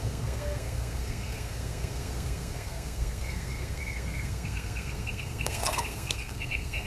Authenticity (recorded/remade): remade